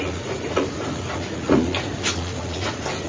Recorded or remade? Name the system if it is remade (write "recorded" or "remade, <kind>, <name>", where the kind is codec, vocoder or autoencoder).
remade, vocoder, Vocos